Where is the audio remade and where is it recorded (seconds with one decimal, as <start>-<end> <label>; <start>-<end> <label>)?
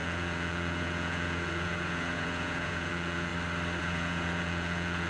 0.0-3.3 remade; 3.3-3.8 recorded; 3.8-5.1 remade